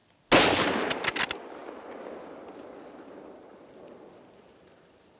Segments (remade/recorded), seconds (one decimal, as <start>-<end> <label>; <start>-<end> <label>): 0.0-5.2 recorded